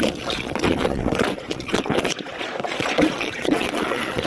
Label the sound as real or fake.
fake